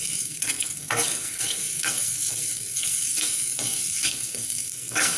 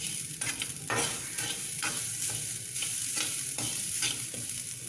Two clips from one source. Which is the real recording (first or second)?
second